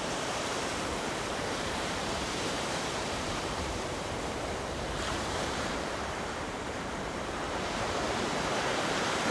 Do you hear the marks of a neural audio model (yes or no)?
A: yes